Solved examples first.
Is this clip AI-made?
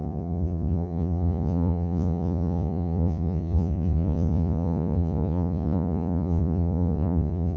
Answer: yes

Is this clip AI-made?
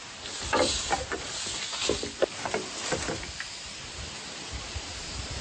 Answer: no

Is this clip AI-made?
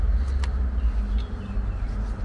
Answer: no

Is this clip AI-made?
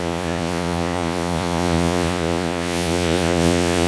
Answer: yes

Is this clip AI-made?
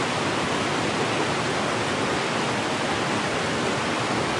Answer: no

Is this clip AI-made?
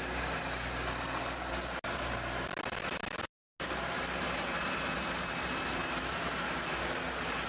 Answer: no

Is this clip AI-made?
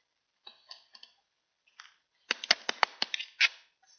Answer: no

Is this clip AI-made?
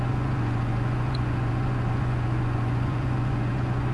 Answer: yes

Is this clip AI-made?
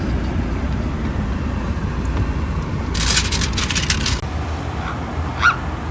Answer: no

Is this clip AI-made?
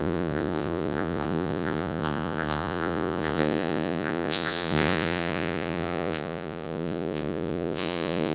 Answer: yes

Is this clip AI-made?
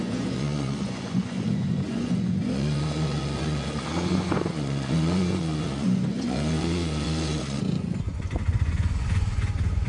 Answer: yes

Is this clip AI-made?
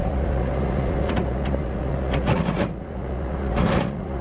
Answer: yes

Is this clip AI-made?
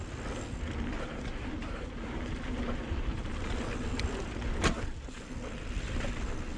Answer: no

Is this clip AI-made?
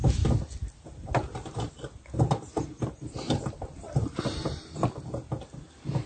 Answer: no